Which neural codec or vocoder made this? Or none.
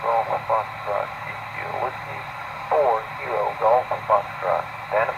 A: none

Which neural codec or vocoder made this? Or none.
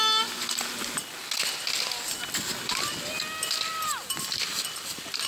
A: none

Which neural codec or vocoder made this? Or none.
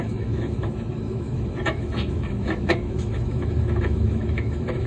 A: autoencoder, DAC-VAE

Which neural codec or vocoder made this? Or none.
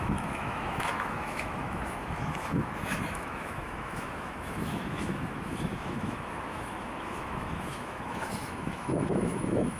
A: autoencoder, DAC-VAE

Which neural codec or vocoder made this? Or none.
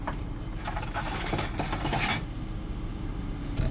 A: none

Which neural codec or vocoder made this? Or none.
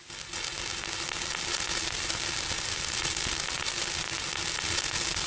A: none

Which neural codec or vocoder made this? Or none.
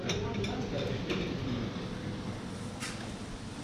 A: none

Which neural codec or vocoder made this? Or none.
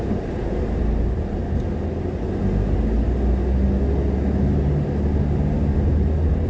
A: none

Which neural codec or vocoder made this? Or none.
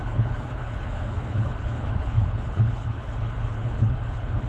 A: codec, HILCodec